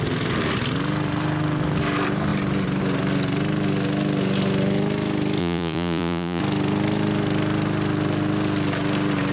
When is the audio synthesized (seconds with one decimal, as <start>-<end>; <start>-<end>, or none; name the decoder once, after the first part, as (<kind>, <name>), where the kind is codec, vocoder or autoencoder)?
5.4-6.4 (vocoder, Vocos)